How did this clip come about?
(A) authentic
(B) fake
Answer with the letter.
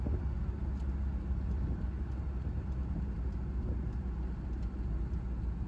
A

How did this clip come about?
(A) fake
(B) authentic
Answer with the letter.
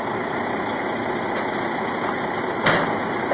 B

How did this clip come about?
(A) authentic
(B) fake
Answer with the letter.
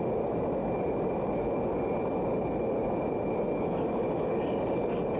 A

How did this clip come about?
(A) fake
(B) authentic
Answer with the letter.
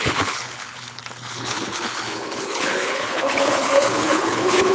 A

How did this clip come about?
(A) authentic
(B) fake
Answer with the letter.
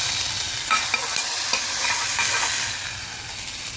A